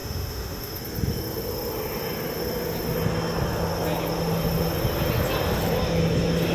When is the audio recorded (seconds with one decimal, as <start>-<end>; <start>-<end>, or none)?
0.8-6.5